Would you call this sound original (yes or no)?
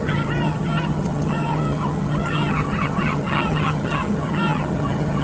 no